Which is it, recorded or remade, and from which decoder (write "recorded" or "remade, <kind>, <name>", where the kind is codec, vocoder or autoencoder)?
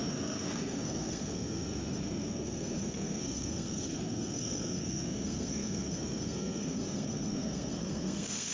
remade, codec, SNAC